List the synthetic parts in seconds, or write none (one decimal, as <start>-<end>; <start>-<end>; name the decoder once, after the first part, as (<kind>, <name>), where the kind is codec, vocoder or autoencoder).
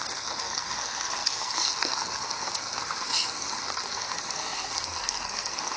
0.0-5.8 (codec, SNAC)